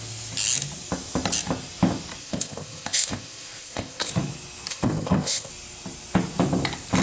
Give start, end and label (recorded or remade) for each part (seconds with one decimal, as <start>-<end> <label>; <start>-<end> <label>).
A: 0.0-2.2 recorded; 2.2-4.1 remade; 4.1-4.7 recorded; 4.7-5.5 remade; 5.5-7.0 recorded